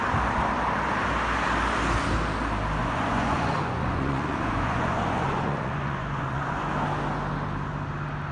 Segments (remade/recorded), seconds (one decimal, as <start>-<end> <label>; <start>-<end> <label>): 0.0-2.8 recorded; 2.8-6.7 remade; 6.7-8.3 recorded